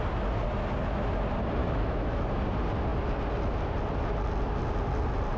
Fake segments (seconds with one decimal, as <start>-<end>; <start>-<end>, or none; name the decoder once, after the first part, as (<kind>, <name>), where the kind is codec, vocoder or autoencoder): 1.6-2.2 (autoencoder, DAC-VAE)